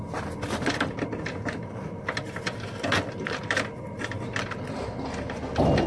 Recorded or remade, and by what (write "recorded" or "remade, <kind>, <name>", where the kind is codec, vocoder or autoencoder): recorded